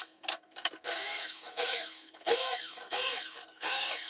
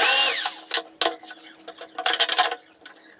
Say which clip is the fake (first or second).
first